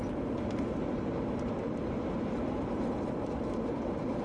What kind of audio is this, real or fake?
real